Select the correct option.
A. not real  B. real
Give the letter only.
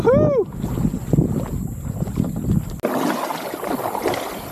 B